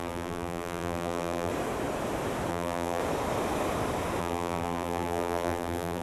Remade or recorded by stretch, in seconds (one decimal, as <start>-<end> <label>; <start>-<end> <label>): 0.0-1.5 remade; 1.5-2.5 recorded; 2.5-3.0 remade; 3.0-4.2 recorded; 4.2-6.0 remade